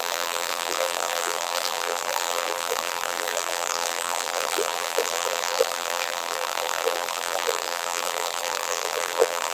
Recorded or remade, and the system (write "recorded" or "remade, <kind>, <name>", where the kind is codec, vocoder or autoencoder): remade, vocoder, BigVGAN v2